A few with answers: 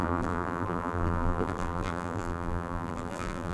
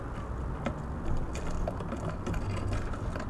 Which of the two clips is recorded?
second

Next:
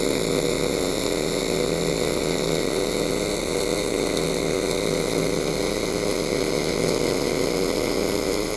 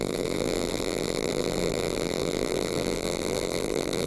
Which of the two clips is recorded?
first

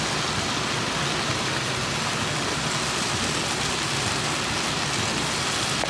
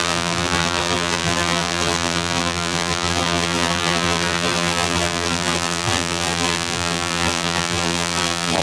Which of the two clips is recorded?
first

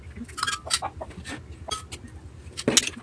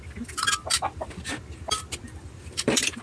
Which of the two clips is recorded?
first